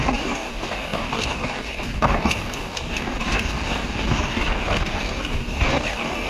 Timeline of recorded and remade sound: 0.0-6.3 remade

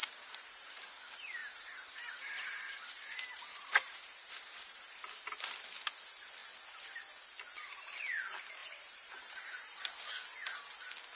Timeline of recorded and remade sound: 0.0-0.7 remade; 0.7-1.4 recorded; 1.4-5.0 remade; 5.0-8.6 recorded; 8.6-9.8 remade; 9.8-11.2 recorded